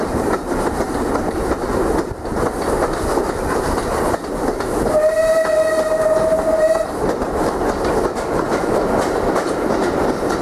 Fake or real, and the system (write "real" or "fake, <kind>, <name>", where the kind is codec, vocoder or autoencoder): real